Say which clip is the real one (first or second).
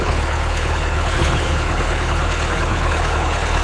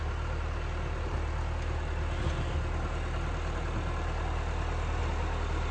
second